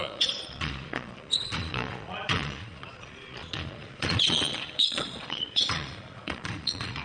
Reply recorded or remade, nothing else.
remade